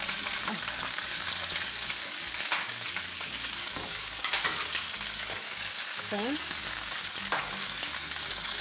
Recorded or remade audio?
remade